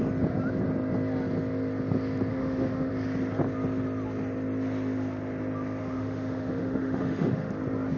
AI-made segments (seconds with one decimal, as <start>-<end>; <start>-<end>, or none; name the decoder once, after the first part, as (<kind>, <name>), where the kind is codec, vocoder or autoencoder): 2.3-2.9 (autoencoder, DAC-VAE); 5.8-7.5